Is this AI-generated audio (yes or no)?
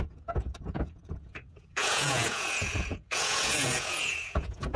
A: yes